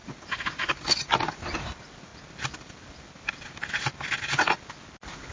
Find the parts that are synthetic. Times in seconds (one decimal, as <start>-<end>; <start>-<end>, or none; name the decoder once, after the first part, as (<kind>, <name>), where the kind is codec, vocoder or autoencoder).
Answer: none